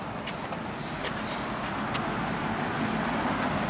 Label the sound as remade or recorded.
recorded